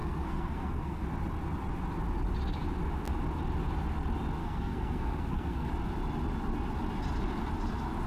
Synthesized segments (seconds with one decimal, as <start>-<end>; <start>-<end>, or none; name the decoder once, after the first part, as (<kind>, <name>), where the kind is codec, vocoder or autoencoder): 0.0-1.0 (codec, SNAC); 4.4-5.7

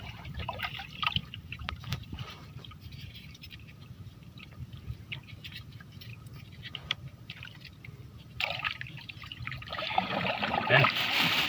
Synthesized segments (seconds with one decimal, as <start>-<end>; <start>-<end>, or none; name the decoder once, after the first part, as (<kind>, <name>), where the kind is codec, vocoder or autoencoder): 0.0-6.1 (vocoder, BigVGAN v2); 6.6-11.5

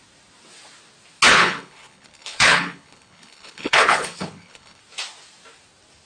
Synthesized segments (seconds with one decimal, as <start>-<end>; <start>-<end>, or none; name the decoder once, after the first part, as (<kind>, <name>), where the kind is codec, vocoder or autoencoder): 1.3-4.8 (codec, HILCodec)

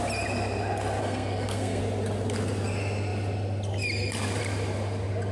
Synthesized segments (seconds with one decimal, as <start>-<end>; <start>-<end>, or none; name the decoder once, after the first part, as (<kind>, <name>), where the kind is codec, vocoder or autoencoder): 1.0-1.8 (codec, SNAC)

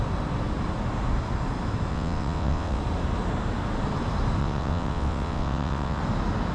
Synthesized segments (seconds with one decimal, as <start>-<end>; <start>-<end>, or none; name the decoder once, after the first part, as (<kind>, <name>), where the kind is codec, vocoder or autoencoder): 1.9-2.8 (vocoder, WaveNeXt); 4.4-6.0